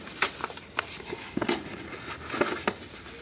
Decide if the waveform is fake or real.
real